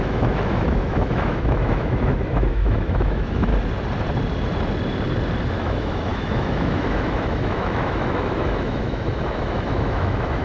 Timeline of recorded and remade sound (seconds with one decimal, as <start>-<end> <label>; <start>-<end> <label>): 0.0-3.5 remade; 3.5-5.5 recorded; 5.5-10.4 remade

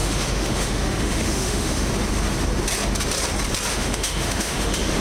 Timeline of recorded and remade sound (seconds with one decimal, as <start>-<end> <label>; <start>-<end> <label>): 0.0-1.9 remade; 1.9-3.7 recorded; 3.7-5.0 remade

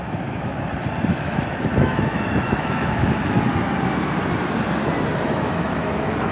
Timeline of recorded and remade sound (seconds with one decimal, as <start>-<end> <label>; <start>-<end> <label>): 0.0-1.1 recorded; 1.1-3.4 remade; 3.4-5.1 recorded; 5.1-6.3 remade

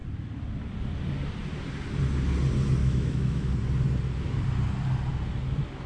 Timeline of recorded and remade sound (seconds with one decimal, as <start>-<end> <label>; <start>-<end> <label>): 0.0-2.8 recorded; 2.8-3.5 remade; 3.5-5.9 recorded

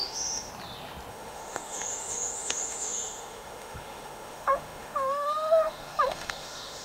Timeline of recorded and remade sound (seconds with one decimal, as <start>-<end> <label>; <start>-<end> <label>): 0.0-0.5 remade; 0.5-1.1 recorded; 1.1-6.8 remade

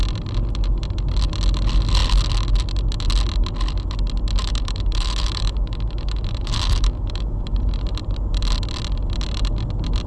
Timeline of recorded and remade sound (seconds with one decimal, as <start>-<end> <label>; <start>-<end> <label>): 0.0-4.4 recorded; 4.4-7.6 remade; 7.6-10.1 recorded

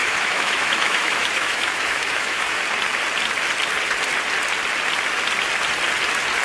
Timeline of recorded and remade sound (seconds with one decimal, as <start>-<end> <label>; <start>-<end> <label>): 0.0-2.6 remade; 2.6-6.4 recorded